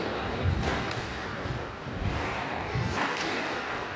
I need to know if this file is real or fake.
fake